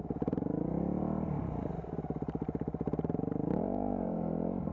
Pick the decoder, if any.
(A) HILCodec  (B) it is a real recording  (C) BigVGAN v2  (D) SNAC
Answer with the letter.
C